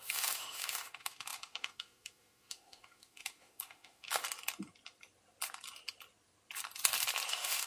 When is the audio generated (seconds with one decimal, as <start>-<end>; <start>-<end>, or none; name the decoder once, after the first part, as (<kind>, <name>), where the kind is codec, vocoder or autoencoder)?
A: 0.0-4.2 (autoencoder, DAC-VAE); 7.3-7.7